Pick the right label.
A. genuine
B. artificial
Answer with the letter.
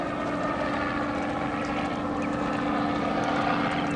A